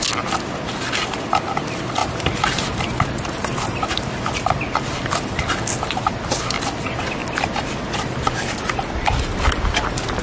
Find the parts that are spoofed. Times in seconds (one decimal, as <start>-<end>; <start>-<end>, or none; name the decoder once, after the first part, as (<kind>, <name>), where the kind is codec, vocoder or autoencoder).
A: 2.0-4.1 (vocoder, BigVGAN v2)

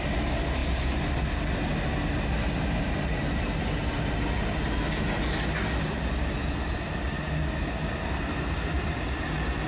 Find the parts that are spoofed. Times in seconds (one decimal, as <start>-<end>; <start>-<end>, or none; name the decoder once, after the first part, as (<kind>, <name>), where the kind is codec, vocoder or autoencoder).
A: none